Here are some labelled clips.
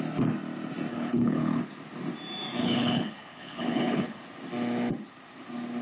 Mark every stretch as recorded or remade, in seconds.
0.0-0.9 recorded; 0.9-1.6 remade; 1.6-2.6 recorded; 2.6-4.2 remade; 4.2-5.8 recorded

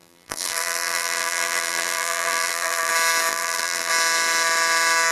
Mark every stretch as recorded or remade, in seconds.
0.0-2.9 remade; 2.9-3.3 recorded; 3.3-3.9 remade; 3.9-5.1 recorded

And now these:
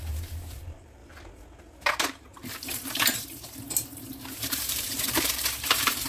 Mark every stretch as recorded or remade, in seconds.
0.0-1.0 remade; 1.0-2.0 recorded; 2.0-6.1 remade

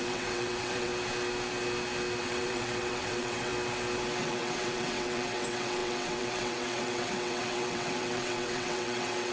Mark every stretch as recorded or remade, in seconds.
0.0-0.9 remade; 0.9-2.2 recorded; 2.2-3.5 remade; 3.5-4.2 recorded; 4.2-9.3 remade

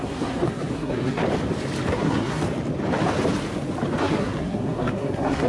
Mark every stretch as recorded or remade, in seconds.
0.0-1.2 remade; 1.2-1.9 recorded; 1.9-2.4 remade; 2.4-4.0 recorded; 4.0-5.5 remade

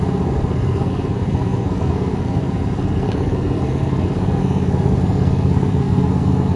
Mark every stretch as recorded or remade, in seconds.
0.0-6.6 remade